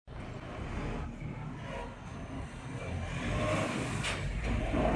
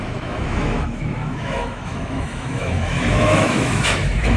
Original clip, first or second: first